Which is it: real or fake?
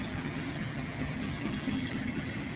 fake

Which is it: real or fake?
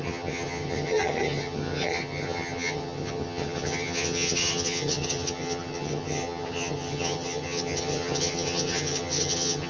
fake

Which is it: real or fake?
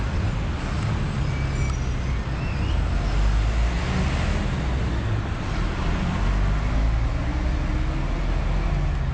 real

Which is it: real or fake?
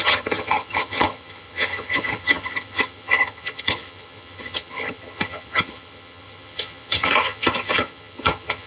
fake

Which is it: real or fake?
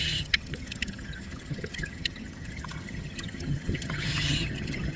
fake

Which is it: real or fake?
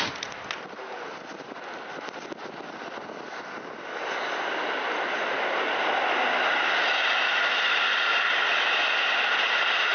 real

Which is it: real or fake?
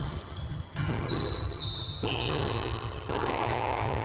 fake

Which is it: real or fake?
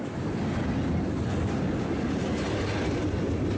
real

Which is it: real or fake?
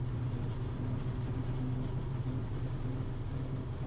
real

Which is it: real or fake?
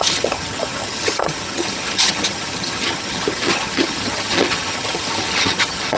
fake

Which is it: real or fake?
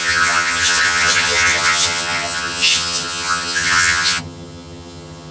fake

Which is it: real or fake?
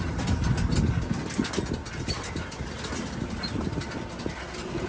real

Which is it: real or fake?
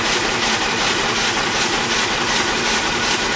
real